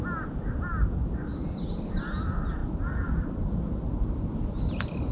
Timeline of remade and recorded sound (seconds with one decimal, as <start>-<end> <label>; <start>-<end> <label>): 0.0-5.1 recorded